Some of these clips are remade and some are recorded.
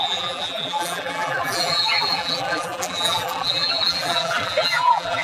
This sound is remade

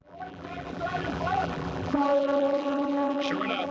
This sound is remade